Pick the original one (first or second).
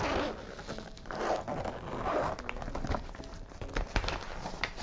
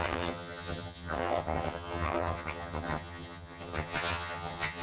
first